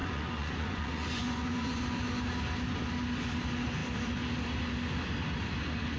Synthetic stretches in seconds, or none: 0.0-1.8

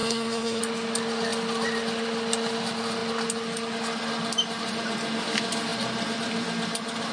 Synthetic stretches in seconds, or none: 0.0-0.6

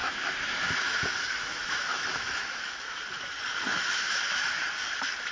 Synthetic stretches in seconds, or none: 0.0-3.0; 3.7-4.6

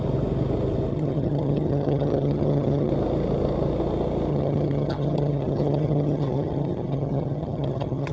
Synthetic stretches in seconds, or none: 0.9-2.9; 4.3-8.1

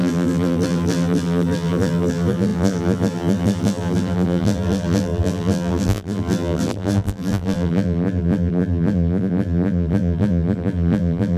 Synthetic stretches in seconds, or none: 0.0-11.4